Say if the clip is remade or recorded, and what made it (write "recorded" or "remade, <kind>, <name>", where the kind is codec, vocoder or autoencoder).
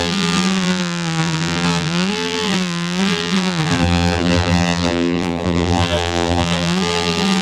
remade, vocoder, BigVGAN v2